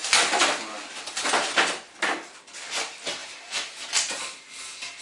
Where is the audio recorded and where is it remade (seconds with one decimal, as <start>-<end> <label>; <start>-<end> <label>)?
0.0-3.2 recorded; 3.2-4.2 remade; 4.2-5.0 recorded